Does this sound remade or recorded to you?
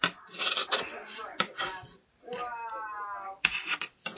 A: remade